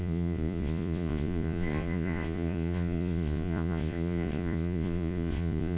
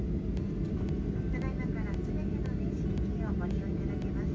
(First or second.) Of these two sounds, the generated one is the first